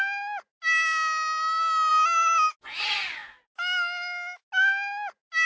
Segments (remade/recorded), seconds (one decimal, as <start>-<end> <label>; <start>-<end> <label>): 0.0-5.5 recorded